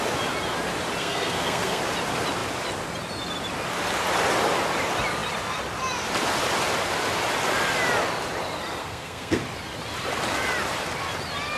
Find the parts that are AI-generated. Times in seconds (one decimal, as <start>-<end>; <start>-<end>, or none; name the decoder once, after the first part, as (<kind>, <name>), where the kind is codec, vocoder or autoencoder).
1.0-1.8 (codec, SNAC); 8.8-9.4